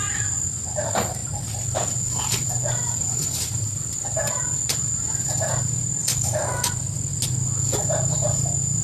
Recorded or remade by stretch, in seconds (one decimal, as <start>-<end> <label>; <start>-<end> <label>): 0.0-6.0 recorded; 6.0-6.6 remade; 6.6-8.8 recorded